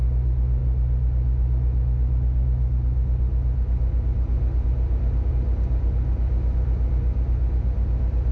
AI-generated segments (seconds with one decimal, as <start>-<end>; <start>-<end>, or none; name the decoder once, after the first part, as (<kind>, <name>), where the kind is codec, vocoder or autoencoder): none